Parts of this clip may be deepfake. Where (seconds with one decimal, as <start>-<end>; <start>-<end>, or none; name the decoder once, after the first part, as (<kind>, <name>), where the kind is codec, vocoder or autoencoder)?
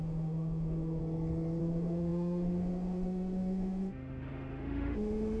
0.0-1.0 (autoencoder, DAC-VAE); 1.6-5.4